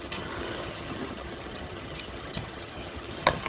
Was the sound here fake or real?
fake